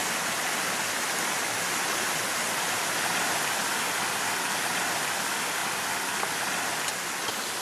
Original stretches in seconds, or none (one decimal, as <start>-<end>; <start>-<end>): 0.0-7.6